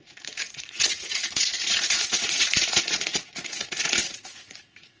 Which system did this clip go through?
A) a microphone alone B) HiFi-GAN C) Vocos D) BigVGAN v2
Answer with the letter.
C